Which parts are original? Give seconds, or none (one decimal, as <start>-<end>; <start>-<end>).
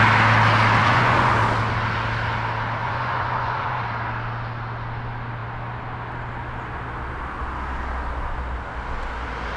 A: 0.0-0.8; 1.3-2.8; 3.8-9.6